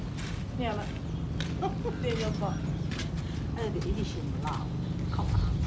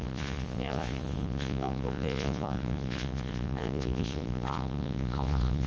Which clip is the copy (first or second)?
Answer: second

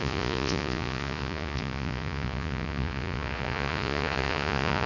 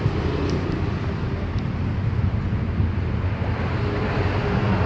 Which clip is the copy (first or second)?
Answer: first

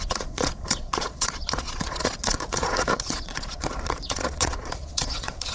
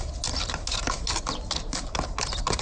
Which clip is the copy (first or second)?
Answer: first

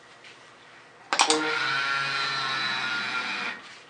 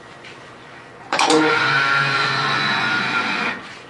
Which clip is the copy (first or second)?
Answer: second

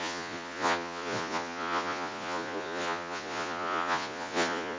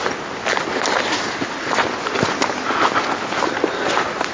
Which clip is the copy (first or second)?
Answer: first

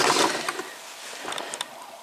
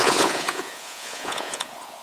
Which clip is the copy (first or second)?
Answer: second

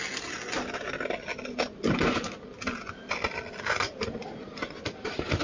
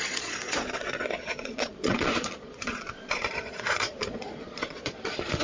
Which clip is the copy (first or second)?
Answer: second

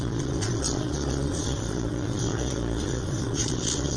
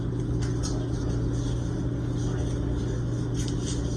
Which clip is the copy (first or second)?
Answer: first